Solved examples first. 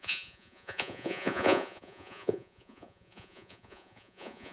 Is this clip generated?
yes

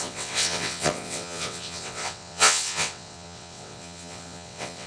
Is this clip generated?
yes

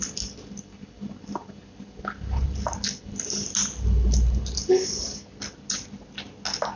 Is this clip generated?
no